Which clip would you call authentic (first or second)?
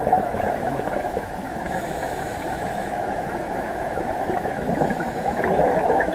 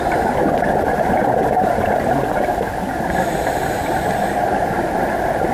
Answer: second